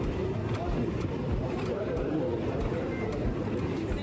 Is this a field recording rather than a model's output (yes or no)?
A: yes